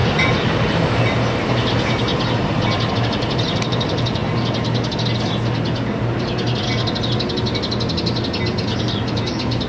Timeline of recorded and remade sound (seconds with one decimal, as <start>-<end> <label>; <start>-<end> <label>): 0.0-2.1 remade; 2.1-2.9 recorded; 2.9-4.2 remade; 4.2-8.8 recorded; 8.8-9.7 remade